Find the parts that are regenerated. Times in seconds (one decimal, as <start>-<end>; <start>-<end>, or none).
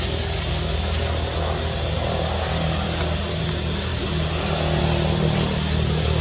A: none